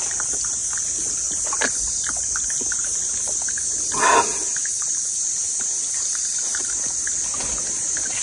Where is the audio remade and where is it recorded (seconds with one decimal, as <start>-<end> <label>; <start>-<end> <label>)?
0.0-8.2 recorded